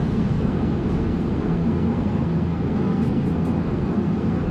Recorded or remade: remade